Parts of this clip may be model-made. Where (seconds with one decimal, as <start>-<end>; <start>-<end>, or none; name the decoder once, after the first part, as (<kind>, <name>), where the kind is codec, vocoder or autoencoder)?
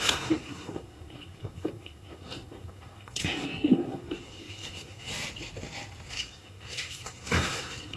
0.0-5.1 (codec, SNAC); 6.1-8.0